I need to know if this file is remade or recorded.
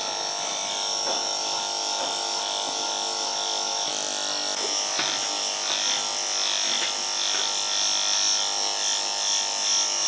recorded